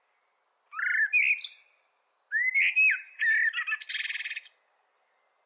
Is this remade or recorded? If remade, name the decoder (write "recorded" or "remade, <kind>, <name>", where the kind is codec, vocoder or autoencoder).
recorded